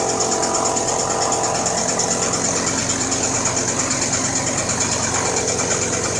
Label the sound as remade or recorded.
recorded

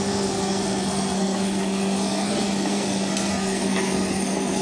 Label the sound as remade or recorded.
remade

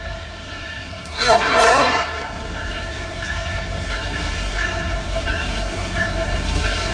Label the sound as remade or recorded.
remade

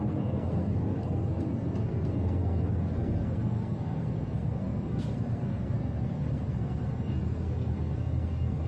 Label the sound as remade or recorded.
remade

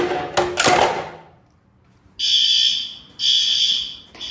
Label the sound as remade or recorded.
recorded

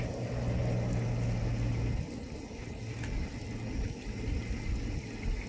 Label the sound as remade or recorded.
recorded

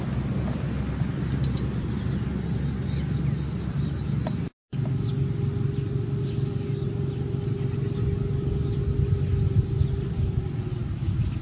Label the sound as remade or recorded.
recorded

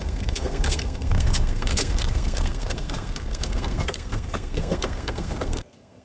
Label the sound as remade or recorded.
remade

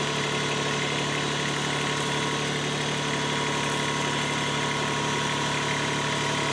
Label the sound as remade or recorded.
recorded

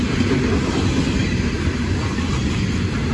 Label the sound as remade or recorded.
recorded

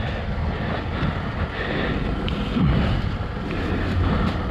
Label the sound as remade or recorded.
recorded